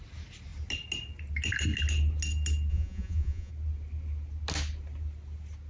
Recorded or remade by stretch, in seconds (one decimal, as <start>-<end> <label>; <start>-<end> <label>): 0.0-2.7 recorded; 2.7-3.5 remade; 3.5-5.7 recorded